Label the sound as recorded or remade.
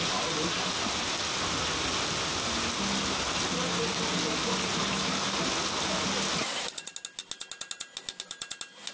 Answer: recorded